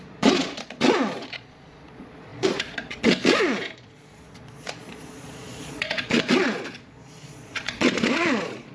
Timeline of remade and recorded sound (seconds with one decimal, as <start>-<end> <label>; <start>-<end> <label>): 0.0-8.7 remade